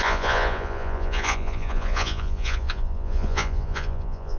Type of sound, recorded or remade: remade